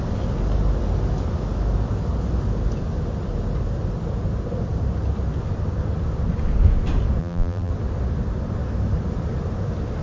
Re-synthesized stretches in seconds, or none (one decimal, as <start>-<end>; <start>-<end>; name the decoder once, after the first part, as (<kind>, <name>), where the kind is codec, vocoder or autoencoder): 7.2-7.7 (vocoder, BigVGAN v2)